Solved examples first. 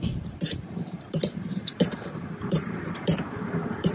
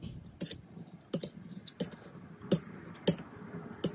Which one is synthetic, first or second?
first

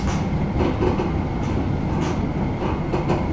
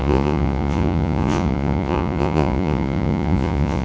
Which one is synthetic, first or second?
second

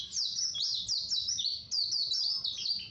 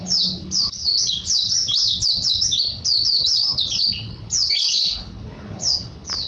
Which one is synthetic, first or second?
second